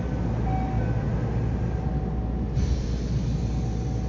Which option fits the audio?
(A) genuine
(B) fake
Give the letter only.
A